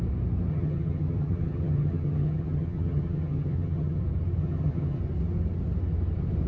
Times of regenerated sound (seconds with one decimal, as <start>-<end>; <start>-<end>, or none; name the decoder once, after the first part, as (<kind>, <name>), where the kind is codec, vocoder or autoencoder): 0.5-4.0 (vocoder, HiFi-GAN); 4.4-5.0